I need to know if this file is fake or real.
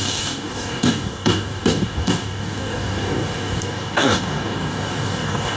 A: fake